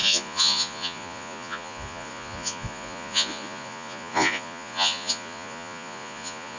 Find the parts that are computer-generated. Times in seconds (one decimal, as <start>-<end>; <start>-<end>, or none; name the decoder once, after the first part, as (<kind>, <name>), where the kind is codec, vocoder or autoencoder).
0.0-6.6 (vocoder, Vocos)